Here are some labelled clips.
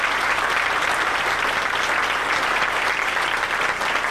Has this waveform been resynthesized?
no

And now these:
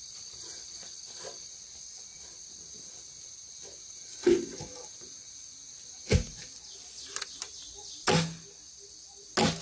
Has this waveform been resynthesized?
no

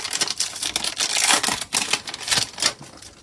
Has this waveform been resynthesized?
no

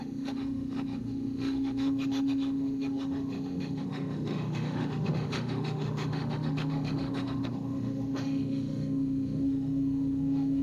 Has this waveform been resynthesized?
yes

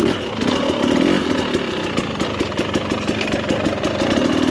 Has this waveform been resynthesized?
no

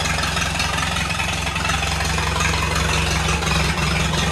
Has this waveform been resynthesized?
no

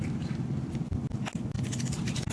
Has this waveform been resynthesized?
no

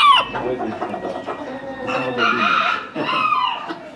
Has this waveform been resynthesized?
no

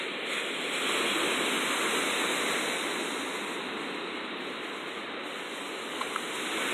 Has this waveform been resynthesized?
no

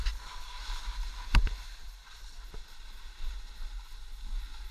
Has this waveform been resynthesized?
no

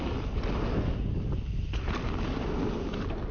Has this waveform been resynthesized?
no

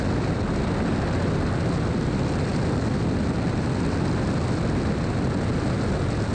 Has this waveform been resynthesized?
no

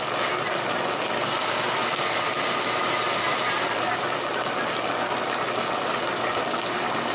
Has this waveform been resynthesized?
no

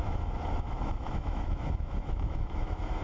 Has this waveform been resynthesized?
yes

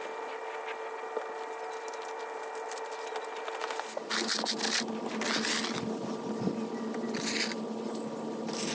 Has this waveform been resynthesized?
no